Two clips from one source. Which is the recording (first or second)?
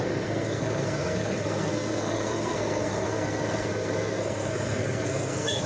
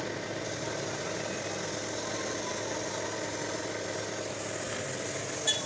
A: second